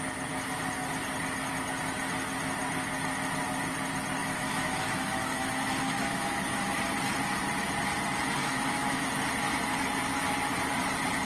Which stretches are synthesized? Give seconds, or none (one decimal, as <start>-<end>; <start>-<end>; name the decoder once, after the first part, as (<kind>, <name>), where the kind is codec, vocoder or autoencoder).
4.2-6.8 (autoencoder, DAC-VAE); 8.4-9.1